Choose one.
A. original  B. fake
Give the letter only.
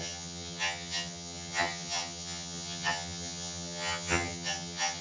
B